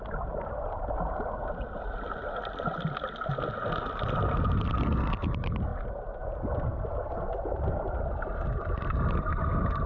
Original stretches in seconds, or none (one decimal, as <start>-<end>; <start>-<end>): 0.0-9.9